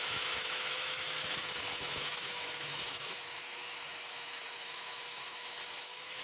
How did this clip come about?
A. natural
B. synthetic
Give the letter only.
B